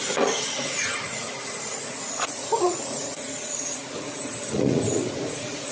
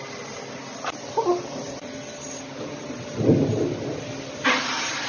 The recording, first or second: second